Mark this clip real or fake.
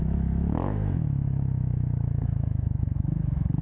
fake